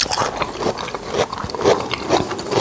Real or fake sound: real